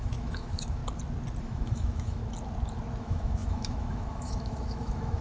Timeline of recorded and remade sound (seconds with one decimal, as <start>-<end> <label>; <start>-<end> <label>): 0.0-0.8 remade; 0.8-1.4 recorded; 1.4-2.2 remade; 2.2-3.0 recorded; 3.0-5.2 remade